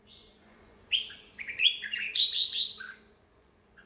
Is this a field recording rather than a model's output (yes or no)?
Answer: no